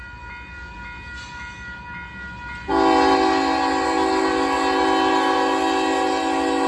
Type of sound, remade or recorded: recorded